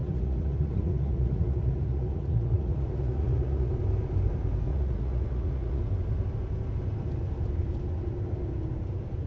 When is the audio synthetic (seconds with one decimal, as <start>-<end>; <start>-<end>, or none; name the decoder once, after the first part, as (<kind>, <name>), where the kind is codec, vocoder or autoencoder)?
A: 0.0-3.7 (vocoder, Vocos); 4.7-5.8